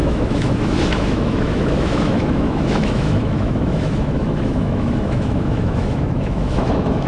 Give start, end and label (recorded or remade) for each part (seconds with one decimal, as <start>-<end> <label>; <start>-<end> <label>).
0.0-7.1 remade